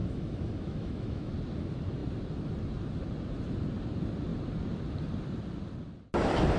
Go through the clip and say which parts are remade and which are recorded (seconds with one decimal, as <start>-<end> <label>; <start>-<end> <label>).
0.0-1.3 remade; 1.3-6.6 recorded